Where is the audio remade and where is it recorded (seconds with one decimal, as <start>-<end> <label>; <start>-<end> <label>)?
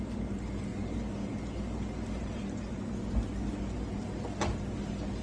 0.0-5.2 recorded